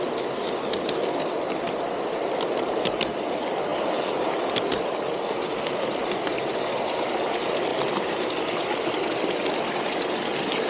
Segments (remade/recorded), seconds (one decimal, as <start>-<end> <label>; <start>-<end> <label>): 0.0-10.7 recorded